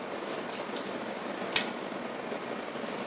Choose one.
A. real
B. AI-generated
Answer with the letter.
A